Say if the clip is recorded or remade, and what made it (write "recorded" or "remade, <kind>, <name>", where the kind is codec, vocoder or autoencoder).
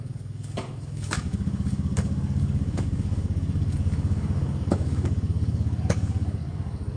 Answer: remade, codec, DAC